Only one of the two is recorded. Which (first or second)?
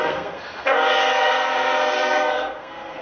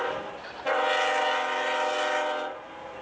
second